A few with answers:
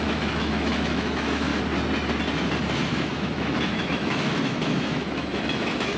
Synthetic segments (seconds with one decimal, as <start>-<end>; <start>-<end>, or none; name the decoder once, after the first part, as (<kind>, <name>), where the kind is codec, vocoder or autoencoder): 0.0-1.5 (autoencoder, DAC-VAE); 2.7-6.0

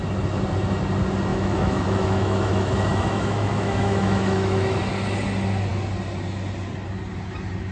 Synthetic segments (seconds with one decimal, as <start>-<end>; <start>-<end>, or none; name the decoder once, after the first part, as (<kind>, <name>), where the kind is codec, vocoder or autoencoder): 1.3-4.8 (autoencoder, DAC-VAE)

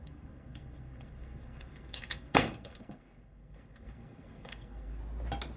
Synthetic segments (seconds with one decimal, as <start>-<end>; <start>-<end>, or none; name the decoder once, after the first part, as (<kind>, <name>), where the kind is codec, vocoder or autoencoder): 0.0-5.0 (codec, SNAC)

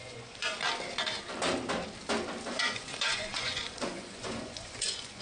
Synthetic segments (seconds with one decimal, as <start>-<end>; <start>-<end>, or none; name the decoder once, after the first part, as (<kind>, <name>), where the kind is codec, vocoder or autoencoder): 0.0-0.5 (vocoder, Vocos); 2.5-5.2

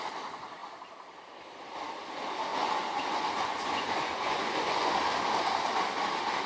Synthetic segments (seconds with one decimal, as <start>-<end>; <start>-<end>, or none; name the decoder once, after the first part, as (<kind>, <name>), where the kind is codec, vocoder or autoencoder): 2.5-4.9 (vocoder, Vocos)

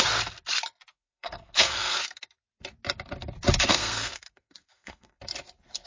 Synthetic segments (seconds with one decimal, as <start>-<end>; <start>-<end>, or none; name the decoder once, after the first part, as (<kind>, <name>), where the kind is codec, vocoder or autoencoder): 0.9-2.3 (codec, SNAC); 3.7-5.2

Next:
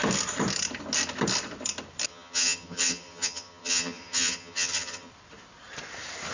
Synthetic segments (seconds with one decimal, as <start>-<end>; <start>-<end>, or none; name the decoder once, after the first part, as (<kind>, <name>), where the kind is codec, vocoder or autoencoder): 2.1-5.1 (vocoder, HiFi-GAN)